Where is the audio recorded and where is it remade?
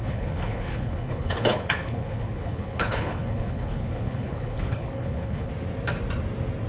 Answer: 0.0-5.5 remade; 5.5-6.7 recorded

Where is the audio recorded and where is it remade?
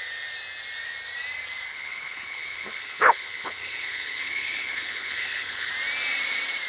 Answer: 0.0-1.7 recorded; 1.7-5.7 remade; 5.7-6.7 recorded